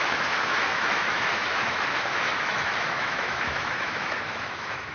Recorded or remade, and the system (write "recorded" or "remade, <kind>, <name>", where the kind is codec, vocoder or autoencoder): remade, autoencoder, DAC-VAE